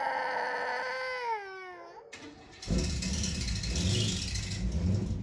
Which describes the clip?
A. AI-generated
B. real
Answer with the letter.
B